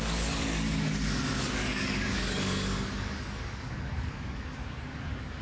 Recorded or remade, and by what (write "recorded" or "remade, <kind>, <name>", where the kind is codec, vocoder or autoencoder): remade, codec, DAC